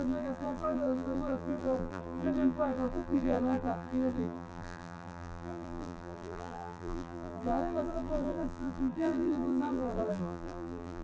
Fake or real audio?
fake